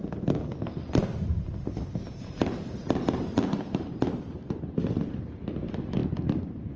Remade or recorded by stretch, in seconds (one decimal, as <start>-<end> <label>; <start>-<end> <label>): 0.0-1.3 recorded; 1.3-4.5 remade; 4.5-6.8 recorded